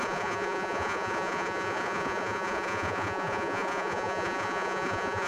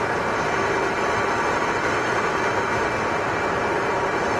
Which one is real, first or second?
second